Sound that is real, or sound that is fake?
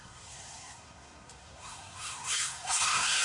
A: fake